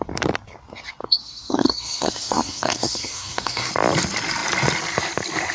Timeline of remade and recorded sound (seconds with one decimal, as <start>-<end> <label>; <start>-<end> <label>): 0.0-1.0 recorded; 1.0-3.7 remade; 3.7-5.5 recorded